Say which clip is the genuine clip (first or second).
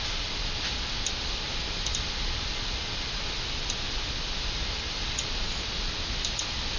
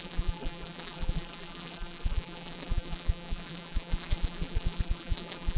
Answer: first